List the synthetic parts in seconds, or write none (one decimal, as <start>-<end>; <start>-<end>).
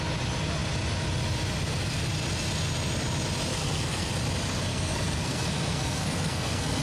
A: 3.5-4.1; 4.7-6.8